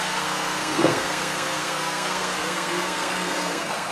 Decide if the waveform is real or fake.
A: fake